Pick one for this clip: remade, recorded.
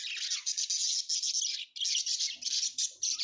recorded